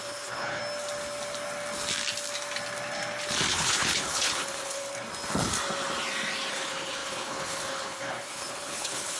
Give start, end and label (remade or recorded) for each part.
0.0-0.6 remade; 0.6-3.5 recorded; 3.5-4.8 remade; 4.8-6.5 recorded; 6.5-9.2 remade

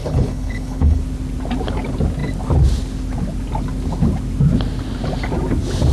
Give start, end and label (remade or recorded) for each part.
0.0-1.0 remade; 1.0-5.9 recorded

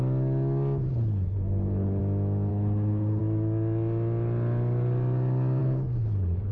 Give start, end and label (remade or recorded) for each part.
0.0-0.9 recorded; 0.9-2.0 remade; 2.0-2.5 recorded; 2.5-3.2 remade; 3.2-5.6 recorded; 5.6-6.5 remade

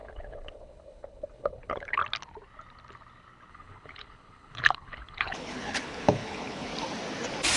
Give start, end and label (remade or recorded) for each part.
0.0-2.0 remade; 2.0-3.5 recorded; 3.5-6.7 remade; 6.7-7.6 recorded

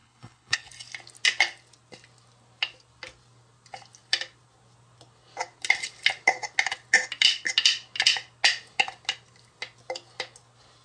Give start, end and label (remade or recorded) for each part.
0.0-0.7 remade; 0.7-10.8 recorded

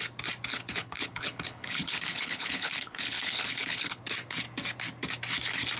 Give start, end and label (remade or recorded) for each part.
0.0-0.5 recorded; 0.5-4.0 remade; 4.0-5.8 recorded

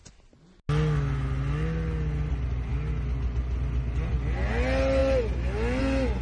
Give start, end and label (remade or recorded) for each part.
0.0-6.2 recorded

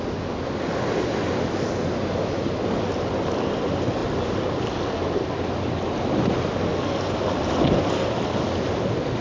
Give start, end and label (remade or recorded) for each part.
0.0-9.2 recorded